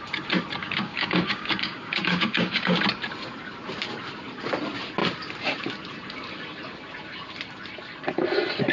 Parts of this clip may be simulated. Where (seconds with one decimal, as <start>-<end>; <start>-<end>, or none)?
0.6-2.8